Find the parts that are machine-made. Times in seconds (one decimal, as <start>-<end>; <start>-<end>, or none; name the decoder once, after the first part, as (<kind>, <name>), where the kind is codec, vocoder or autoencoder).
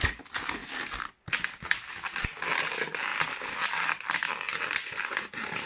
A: none